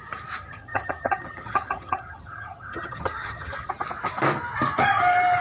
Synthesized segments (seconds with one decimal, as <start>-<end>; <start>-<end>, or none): 0.5-3.7